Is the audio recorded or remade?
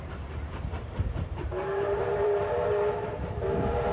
remade